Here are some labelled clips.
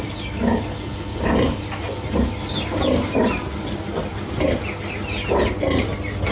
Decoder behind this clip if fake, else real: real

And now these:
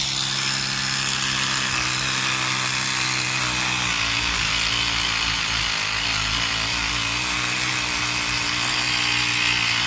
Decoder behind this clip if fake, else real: real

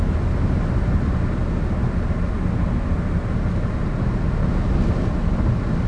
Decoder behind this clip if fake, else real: real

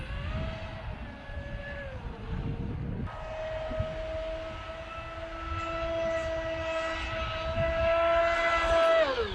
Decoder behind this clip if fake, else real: real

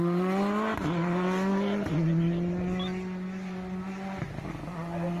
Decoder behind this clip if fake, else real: real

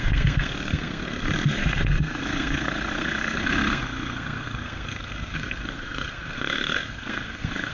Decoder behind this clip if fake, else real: fake, codec, SNAC